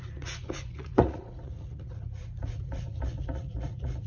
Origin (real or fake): fake